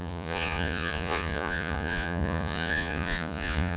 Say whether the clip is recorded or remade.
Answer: remade